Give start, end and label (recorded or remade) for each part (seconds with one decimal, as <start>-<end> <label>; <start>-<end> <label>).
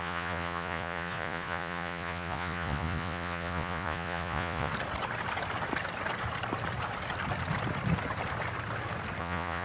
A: 0.0-4.7 remade; 4.7-9.2 recorded; 9.2-9.6 remade